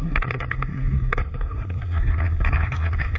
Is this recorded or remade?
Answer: remade